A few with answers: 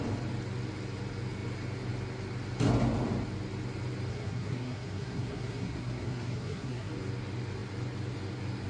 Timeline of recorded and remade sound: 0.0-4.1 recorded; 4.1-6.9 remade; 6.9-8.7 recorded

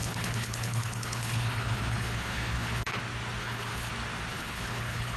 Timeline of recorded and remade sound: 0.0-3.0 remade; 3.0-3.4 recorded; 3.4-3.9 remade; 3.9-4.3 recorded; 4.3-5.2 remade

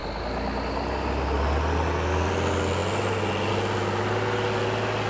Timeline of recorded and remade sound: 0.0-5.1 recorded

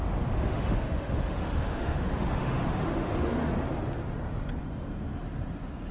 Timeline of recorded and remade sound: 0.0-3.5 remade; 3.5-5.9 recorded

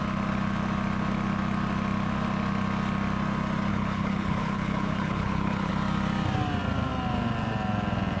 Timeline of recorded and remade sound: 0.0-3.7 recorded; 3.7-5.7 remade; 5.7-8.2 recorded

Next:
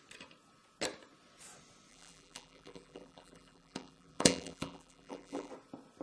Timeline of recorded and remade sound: 0.0-1.9 recorded; 1.9-5.5 remade; 5.5-6.0 recorded